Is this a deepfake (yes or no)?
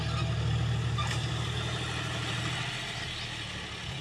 no